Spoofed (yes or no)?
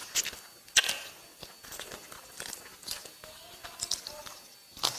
no